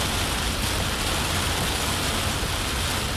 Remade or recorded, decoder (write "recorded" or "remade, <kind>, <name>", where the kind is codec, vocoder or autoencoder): recorded